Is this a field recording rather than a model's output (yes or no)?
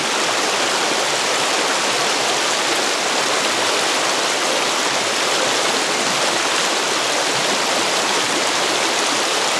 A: yes